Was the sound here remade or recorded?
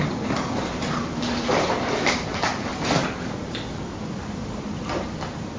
remade